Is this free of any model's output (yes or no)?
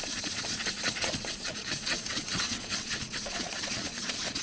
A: no